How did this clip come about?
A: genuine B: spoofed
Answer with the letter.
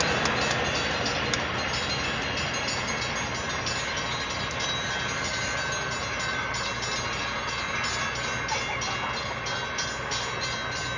A